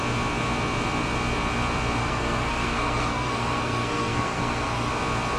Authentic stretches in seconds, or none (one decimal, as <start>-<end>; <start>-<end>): 0.0-2.0; 4.9-5.4

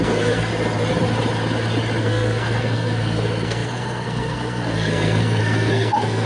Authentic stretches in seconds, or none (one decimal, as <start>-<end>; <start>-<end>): 0.5-2.0

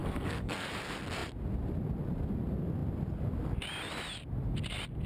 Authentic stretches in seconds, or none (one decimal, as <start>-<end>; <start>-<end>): 0.7-5.1

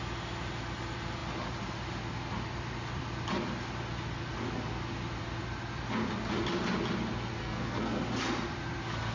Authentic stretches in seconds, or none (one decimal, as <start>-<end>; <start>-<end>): 0.0-7.4; 8.0-9.1

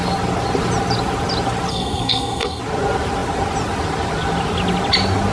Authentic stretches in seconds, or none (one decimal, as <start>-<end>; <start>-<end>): 0.0-1.7; 2.6-5.3

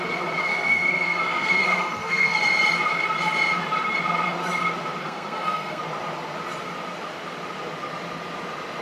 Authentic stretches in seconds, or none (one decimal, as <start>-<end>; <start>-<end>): 0.0-0.4; 2.4-5.0; 5.8-8.8

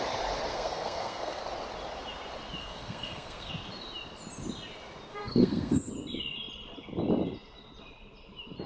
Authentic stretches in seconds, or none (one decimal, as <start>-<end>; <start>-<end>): 0.0-0.5; 1.4-2.6; 3.5-5.1; 5.9-8.7